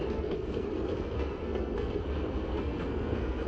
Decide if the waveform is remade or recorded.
remade